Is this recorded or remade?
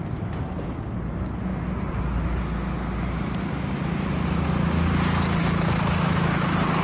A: recorded